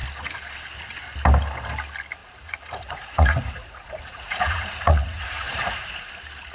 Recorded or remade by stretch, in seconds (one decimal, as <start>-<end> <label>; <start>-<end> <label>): 0.0-2.2 recorded; 2.2-6.1 remade; 6.1-6.5 recorded

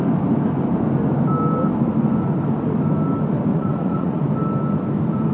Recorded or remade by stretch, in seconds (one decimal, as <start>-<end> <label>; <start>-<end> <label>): 0.0-3.5 recorded; 3.5-4.2 remade; 4.2-5.3 recorded

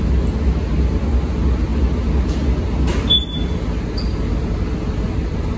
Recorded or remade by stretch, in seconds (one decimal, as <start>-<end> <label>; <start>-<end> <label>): 0.0-5.6 recorded

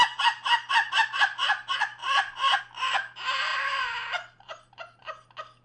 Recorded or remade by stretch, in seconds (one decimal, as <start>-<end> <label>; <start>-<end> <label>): 0.0-2.0 recorded; 2.0-2.6 remade; 2.6-3.5 recorded; 3.5-5.0 remade; 5.0-5.6 recorded